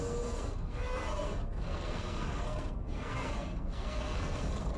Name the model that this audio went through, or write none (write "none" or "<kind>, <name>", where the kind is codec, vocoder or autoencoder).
codec, SNAC